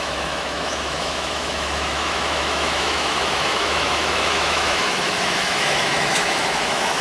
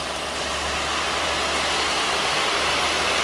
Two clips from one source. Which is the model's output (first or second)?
first